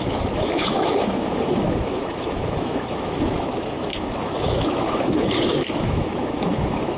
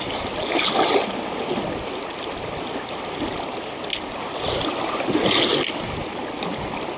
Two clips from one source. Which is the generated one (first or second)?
first